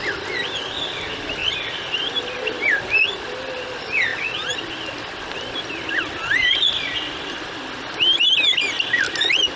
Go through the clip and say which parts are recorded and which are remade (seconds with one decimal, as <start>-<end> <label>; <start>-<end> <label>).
0.0-1.4 recorded; 1.4-2.6 remade; 2.6-4.1 recorded; 4.1-5.5 remade; 5.5-9.6 recorded